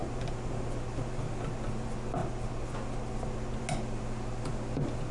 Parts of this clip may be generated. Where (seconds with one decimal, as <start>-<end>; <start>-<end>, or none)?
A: none